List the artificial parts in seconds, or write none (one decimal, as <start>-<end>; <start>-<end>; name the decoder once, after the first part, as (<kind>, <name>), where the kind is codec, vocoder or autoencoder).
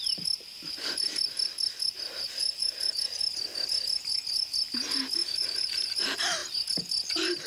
2.4-3.2 (vocoder, BigVGAN v2); 5.2-5.9